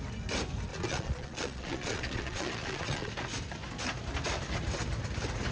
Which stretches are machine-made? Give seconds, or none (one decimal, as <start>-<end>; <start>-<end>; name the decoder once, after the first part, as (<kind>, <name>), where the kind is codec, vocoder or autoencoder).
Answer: 0.7-3.1 (vocoder, Vocos)